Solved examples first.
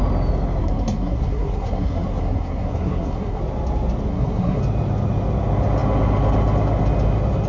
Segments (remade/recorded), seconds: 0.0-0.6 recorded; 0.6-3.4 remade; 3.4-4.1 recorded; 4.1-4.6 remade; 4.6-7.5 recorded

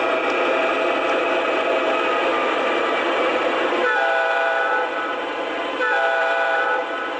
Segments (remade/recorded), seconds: 0.0-2.4 recorded; 2.4-5.4 remade; 5.4-6.2 recorded; 6.2-6.8 remade; 6.8-7.2 recorded

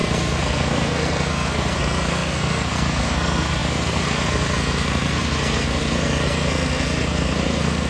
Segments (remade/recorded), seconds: 0.0-7.9 remade

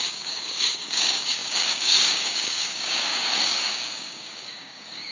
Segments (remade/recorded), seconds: 0.0-5.1 remade

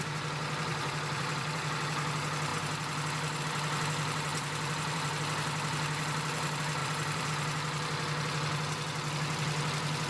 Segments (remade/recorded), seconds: 0.0-0.7 recorded; 0.7-1.7 remade; 1.7-4.3 recorded; 4.3-5.2 remade; 5.2-6.8 recorded; 6.8-7.3 remade; 7.3-10.1 recorded

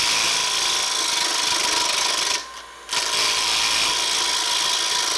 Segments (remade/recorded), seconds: 0.0-5.2 recorded